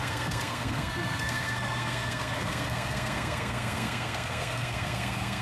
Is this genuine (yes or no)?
no